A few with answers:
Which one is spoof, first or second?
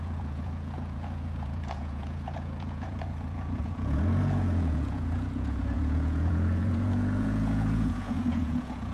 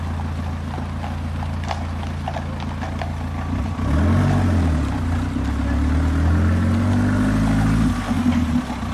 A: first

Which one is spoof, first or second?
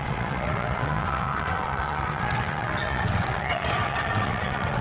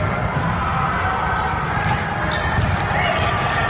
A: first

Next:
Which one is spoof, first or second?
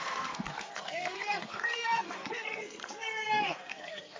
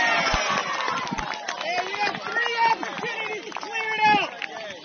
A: first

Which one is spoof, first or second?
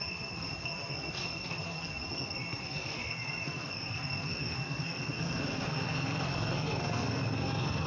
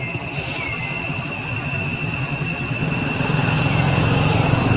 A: first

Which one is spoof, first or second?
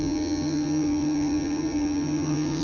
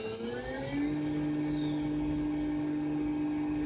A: first